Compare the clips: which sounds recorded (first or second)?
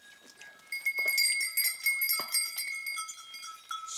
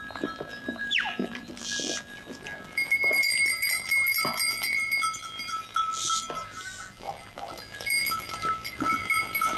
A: first